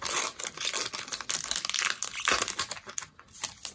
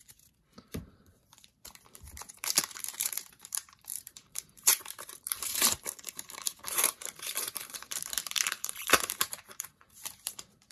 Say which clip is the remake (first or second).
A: second